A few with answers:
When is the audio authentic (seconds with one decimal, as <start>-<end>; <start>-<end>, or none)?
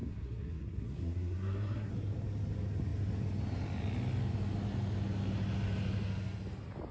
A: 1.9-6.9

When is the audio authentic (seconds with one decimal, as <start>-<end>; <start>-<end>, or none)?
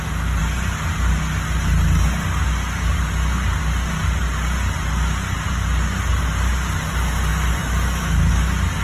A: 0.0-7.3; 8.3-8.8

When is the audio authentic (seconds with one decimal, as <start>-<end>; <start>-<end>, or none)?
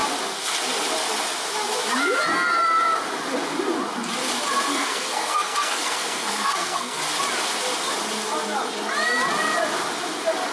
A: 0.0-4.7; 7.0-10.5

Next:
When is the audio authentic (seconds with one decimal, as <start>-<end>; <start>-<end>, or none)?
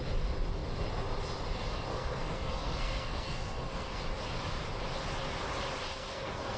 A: 0.0-1.9; 4.0-5.9